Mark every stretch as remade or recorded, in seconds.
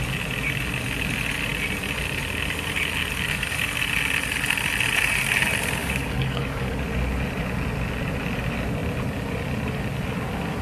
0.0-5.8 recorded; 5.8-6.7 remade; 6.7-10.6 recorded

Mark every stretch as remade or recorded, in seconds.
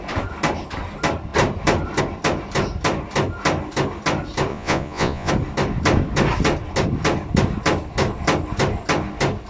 0.0-4.5 recorded; 4.5-5.3 remade; 5.3-9.5 recorded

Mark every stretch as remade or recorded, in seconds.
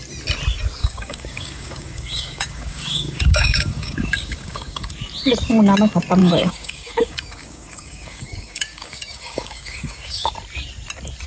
0.0-0.8 recorded; 0.8-4.9 remade; 4.9-6.2 recorded; 6.2-10.3 remade; 10.3-11.3 recorded